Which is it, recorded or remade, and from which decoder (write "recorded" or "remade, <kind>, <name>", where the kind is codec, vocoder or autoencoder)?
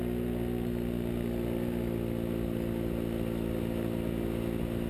recorded